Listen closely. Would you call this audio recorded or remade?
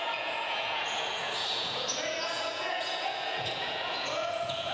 remade